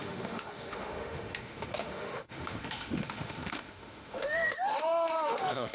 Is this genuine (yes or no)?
no